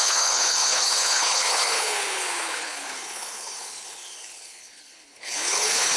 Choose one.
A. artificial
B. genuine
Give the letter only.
A